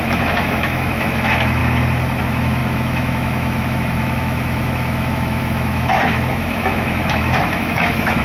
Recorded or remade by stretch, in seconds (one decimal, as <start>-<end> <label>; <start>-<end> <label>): 0.0-1.6 remade; 1.6-2.2 recorded; 2.2-8.2 remade